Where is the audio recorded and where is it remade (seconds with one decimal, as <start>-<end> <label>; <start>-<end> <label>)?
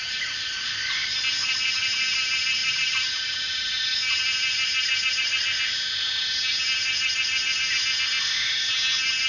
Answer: 0.0-2.6 recorded; 2.6-3.2 remade; 3.2-9.3 recorded